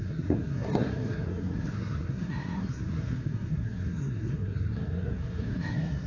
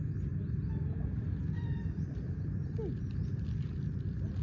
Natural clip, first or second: second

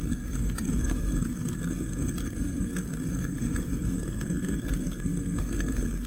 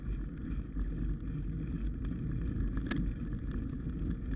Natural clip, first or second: second